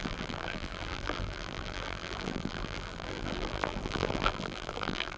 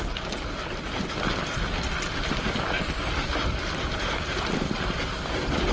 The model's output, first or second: first